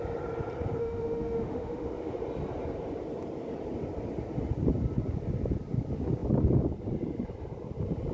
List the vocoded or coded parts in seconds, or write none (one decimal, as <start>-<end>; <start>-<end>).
0.8-2.2